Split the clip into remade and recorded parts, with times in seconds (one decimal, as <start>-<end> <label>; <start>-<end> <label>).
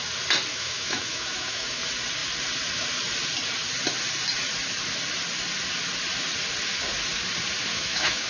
0.0-0.5 recorded; 0.5-1.8 remade; 1.8-7.7 recorded; 7.7-8.3 remade